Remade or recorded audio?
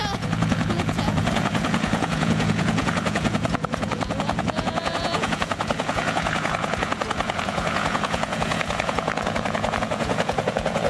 remade